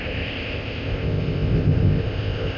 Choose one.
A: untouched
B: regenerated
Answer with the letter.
B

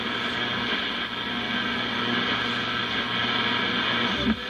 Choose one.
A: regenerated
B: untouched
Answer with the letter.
B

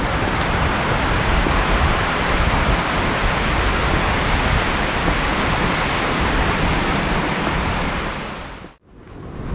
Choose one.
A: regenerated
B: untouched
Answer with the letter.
B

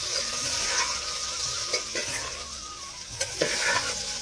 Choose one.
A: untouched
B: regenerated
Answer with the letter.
B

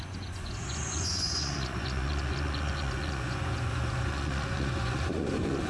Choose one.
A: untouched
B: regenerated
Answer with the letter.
B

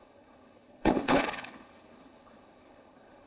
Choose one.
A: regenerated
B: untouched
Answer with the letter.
A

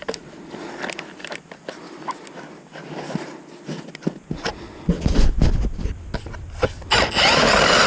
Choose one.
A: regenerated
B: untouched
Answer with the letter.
B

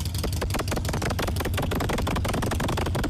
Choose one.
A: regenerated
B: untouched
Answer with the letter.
B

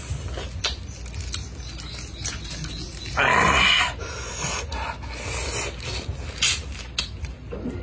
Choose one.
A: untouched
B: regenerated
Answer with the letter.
A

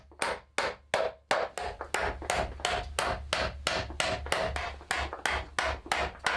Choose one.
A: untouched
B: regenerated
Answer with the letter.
A